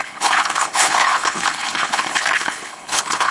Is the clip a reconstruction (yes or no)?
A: yes